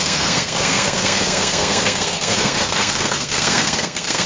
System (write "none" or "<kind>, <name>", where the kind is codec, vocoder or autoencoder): codec, SNAC